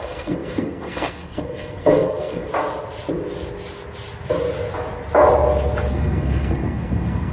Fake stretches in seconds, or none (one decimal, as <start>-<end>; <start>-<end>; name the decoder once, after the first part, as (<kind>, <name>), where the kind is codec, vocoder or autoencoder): 0.0-2.5 (codec, SNAC); 5.9-7.3